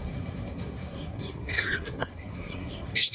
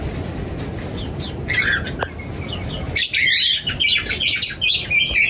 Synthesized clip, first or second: first